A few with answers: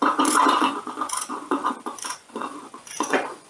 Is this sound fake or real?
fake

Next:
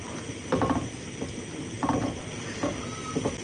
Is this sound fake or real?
real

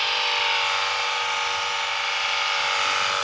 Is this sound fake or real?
real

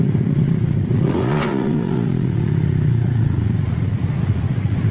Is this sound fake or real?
fake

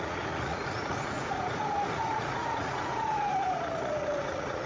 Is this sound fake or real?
fake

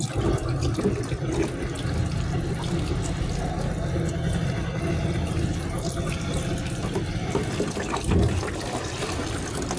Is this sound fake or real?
real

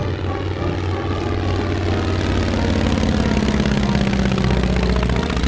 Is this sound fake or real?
real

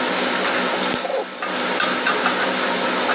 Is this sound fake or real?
real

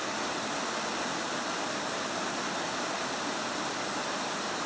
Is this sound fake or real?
real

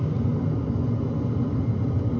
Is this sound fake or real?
real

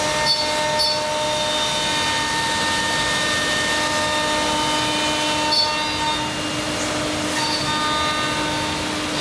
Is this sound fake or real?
real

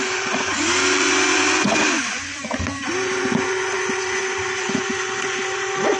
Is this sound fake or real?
fake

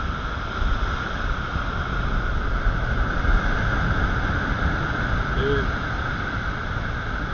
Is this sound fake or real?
real